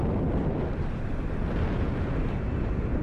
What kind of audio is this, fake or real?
real